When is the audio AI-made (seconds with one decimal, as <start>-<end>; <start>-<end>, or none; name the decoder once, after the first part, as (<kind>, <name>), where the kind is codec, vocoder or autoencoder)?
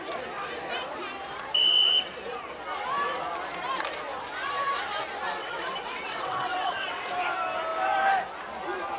5.4-7.1 (vocoder, WaveNeXt)